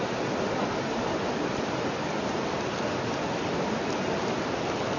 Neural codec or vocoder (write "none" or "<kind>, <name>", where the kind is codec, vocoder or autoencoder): vocoder, BigVGAN v2